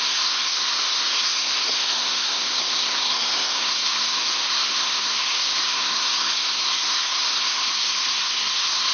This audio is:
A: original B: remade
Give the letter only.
B